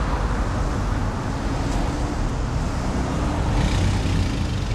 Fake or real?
real